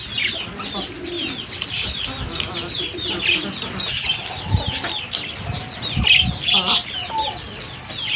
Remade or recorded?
recorded